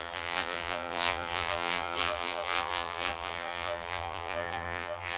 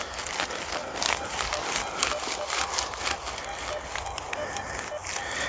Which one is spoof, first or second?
first